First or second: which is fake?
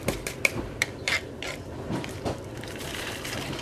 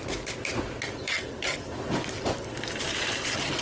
first